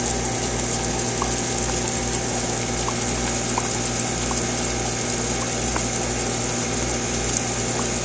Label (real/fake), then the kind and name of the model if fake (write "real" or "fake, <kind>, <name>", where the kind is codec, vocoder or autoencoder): real